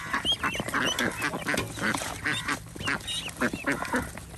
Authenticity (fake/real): real